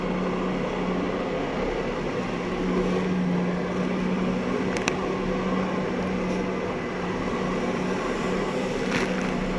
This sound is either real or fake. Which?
real